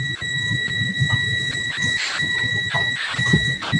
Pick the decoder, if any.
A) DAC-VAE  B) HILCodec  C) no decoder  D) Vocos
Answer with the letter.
C